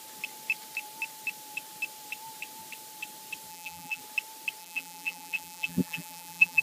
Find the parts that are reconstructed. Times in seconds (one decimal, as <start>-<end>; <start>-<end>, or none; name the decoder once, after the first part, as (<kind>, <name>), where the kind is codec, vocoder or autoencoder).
3.5-4.0 (vocoder, BigVGAN v2); 4.6-6.6